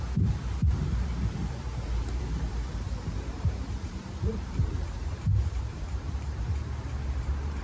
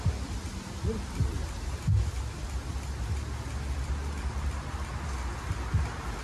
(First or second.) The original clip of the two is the second